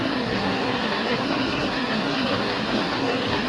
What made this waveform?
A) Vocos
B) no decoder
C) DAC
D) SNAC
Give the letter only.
D